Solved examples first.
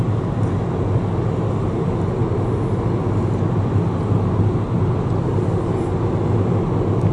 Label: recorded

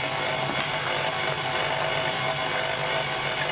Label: recorded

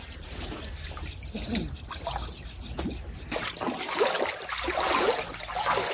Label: recorded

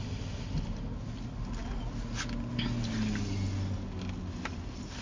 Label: recorded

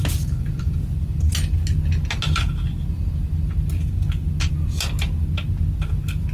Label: recorded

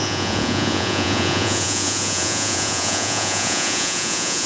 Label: remade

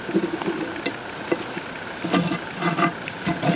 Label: recorded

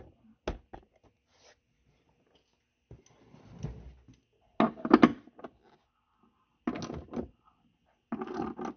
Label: recorded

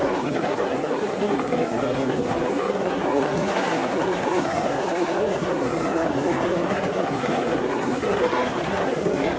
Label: remade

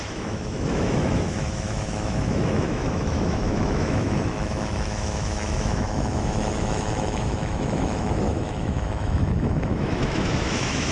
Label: remade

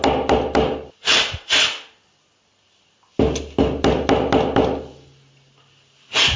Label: recorded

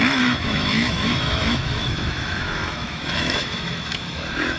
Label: remade